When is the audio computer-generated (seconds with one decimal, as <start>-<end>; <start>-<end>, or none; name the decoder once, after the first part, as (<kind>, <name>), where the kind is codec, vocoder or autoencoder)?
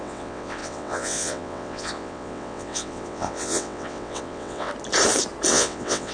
0.0-4.7 (vocoder, WaveNeXt); 5.5-6.1